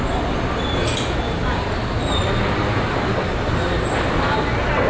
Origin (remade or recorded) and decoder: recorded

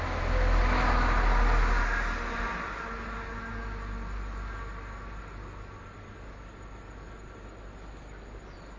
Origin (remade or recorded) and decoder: recorded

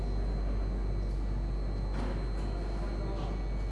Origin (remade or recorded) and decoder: recorded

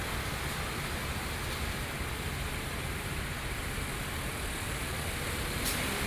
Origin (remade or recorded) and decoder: recorded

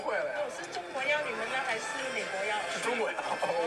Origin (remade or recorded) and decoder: recorded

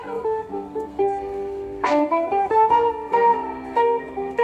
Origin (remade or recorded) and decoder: remade, codec, SNAC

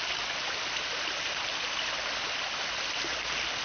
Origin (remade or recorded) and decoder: recorded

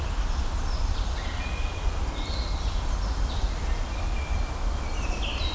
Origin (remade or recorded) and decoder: recorded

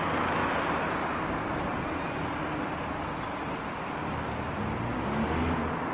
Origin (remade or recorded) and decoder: recorded